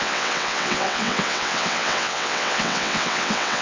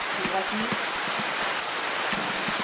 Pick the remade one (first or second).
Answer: first